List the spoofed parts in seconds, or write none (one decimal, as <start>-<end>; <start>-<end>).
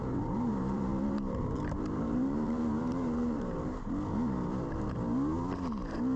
0.0-3.7